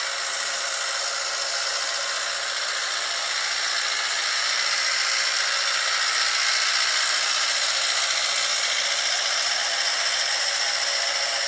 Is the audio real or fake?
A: real